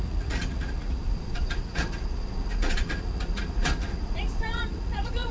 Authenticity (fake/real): fake